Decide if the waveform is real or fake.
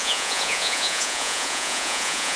fake